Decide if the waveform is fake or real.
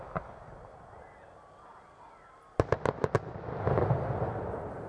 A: real